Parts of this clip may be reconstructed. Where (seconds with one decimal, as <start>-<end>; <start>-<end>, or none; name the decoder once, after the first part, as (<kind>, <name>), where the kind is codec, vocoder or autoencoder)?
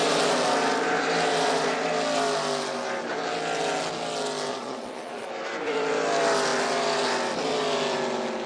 4.5-5.3 (vocoder, Vocos)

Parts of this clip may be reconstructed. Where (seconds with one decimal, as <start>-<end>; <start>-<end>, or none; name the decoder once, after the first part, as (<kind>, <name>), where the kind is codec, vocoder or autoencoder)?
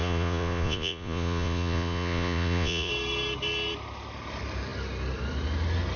0.0-2.9 (vocoder, Vocos)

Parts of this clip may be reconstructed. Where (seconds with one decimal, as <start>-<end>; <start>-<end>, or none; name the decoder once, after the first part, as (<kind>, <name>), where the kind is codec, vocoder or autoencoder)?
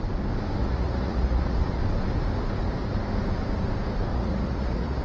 0.6-1.8 (vocoder, Vocos); 4.1-5.0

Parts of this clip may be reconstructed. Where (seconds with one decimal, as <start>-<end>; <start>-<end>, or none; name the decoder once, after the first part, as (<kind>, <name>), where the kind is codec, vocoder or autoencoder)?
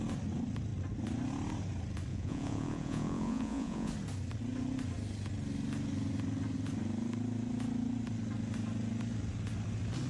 2.1-3.9 (vocoder, Vocos)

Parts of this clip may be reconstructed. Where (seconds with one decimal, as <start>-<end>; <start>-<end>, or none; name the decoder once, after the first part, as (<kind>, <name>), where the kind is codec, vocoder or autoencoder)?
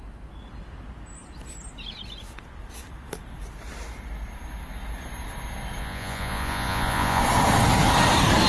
5.8-7.2 (vocoder, Vocos)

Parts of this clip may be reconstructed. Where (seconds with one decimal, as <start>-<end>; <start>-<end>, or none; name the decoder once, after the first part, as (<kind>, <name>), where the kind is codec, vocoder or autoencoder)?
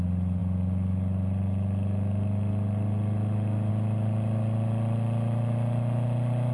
none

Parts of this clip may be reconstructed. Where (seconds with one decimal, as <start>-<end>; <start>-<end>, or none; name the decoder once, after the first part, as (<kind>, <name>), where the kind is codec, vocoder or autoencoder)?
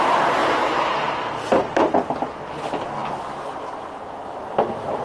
none